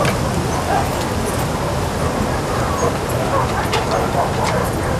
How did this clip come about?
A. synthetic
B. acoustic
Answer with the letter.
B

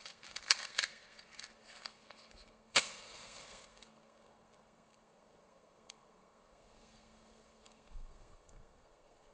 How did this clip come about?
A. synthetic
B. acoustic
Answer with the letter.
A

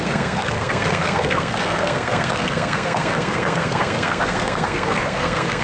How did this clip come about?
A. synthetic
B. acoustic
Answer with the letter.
A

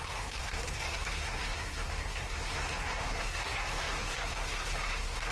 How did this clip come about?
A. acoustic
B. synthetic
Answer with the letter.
B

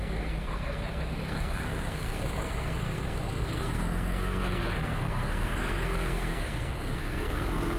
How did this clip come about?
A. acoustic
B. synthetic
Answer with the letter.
B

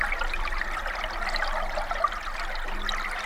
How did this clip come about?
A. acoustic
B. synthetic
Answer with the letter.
A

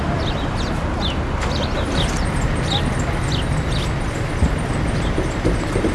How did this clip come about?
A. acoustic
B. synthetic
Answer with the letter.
A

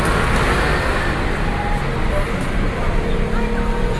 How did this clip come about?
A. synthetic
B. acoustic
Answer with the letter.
B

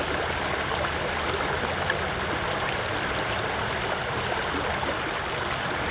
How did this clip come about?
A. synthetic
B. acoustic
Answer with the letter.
B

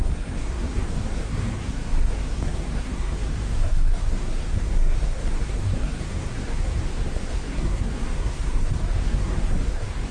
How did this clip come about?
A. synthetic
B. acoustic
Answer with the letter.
A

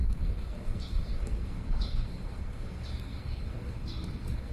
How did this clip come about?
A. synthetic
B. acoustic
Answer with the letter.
A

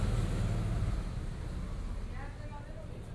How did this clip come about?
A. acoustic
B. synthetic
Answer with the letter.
A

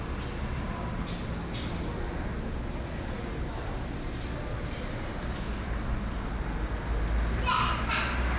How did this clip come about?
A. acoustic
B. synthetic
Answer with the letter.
A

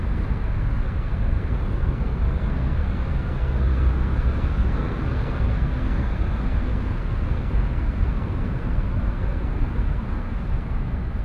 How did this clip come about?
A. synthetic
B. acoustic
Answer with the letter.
A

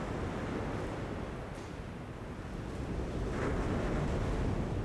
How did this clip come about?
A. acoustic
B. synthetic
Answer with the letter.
A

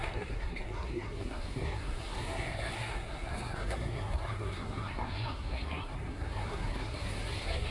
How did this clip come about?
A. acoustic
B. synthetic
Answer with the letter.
B